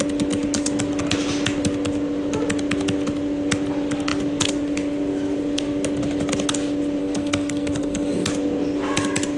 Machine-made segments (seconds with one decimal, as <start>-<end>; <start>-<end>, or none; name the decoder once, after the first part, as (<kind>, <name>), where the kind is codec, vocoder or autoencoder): 7.0-8.3 (codec, SNAC)